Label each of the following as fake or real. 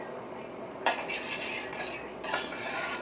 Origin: fake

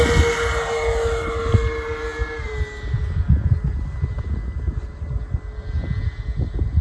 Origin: real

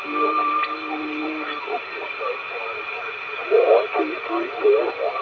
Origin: real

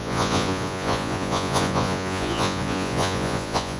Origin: fake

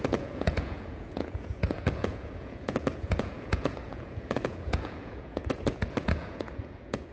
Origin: fake